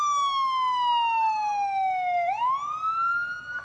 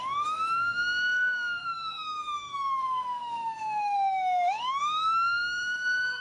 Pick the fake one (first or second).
second